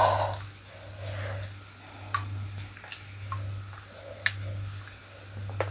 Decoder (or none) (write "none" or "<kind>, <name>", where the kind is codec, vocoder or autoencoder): none